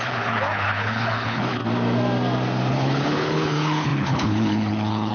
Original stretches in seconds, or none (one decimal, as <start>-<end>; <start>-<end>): 1.6-2.7